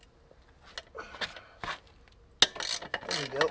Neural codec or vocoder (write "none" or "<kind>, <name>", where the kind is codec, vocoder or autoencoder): none